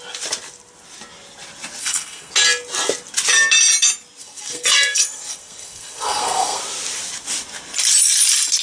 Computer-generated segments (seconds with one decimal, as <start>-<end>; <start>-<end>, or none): 1.8-2.3; 4.2-6.6